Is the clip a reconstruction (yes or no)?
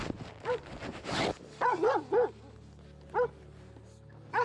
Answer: no